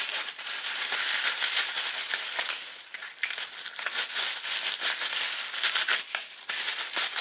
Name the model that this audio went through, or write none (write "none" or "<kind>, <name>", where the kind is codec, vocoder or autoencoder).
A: none